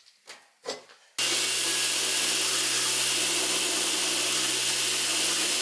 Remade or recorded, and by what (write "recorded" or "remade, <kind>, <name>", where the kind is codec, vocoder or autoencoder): recorded